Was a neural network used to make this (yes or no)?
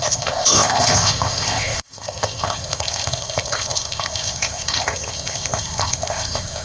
yes